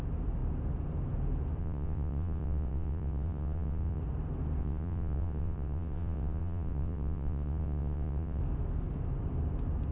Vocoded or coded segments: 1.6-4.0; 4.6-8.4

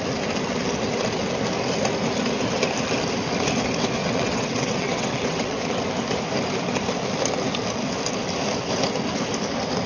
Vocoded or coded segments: 4.0-5.6

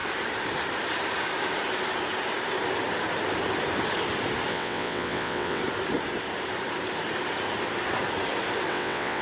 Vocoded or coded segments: 4.5-5.6; 8.7-9.2

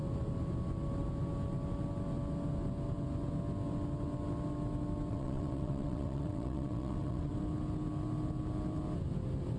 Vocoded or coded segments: 5.1-7.3

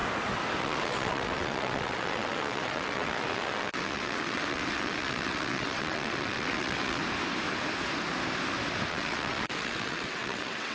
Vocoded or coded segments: 0.6-7.0; 8.9-10.7

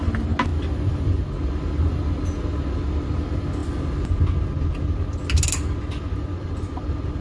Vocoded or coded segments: none